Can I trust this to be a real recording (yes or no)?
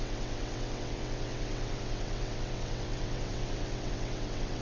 no